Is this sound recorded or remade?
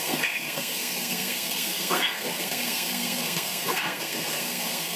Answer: remade